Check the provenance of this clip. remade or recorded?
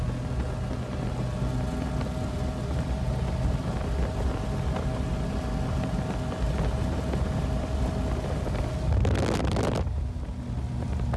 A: recorded